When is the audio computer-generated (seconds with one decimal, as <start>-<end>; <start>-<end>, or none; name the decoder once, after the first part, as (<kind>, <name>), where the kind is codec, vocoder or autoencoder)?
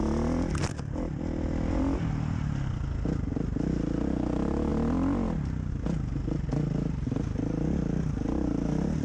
none